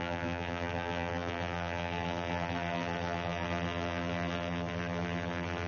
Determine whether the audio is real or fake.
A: fake